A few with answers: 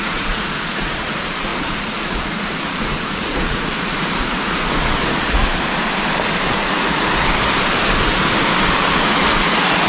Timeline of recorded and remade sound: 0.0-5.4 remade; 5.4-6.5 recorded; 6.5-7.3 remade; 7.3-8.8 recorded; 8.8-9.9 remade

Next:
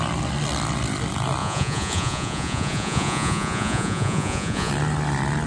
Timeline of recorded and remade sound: 0.0-1.4 recorded; 1.4-4.7 remade; 4.7-5.5 recorded

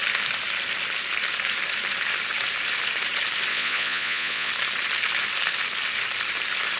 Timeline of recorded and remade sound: 0.0-3.5 recorded; 3.5-4.5 remade; 4.5-6.8 recorded

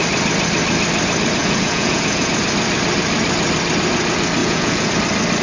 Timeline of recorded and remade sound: 0.0-1.4 recorded; 1.4-2.3 remade; 2.3-4.4 recorded; 4.4-4.9 remade; 4.9-5.4 recorded